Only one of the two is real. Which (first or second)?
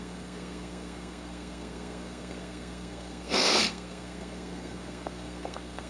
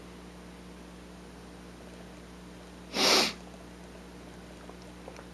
second